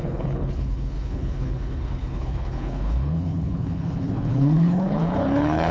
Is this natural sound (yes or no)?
no